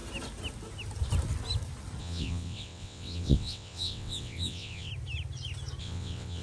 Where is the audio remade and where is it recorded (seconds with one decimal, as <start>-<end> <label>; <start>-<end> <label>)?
0.0-2.0 recorded; 2.0-4.9 remade; 4.9-5.8 recorded; 5.8-6.4 remade